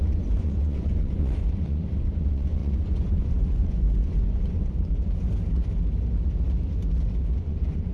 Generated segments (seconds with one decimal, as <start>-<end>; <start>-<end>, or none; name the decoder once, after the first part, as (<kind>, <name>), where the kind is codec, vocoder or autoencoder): 0.0-4.9 (vocoder, Vocos); 7.4-7.9